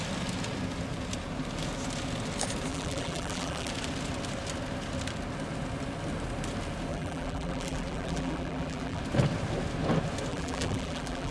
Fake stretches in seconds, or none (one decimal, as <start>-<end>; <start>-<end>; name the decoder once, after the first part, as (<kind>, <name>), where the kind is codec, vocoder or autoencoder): 2.7-3.7 (vocoder, BigVGAN v2); 6.9-9.0; 10.3-11.3